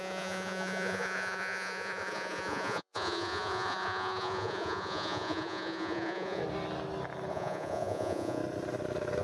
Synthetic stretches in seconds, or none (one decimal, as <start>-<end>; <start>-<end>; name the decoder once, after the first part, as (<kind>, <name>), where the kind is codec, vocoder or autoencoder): 0.0-6.4 (vocoder, Vocos); 7.3-8.4